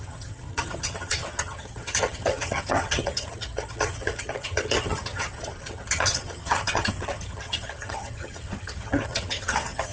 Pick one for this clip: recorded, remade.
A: remade